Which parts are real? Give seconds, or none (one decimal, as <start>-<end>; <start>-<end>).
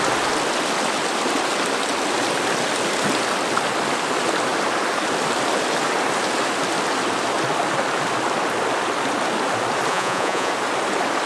0.0-9.9; 10.5-11.3